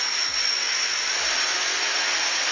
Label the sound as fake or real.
real